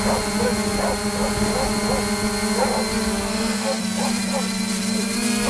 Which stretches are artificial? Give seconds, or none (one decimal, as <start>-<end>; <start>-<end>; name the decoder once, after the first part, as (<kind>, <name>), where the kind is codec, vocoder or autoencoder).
3.1-3.8 (codec, SNAC)